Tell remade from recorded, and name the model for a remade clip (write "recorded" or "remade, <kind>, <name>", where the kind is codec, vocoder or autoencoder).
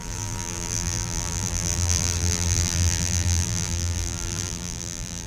remade, vocoder, BigVGAN v2